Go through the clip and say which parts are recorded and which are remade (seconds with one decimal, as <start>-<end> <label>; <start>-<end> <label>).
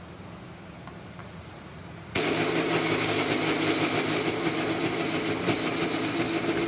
0.0-1.2 recorded; 1.2-2.2 remade; 2.2-6.7 recorded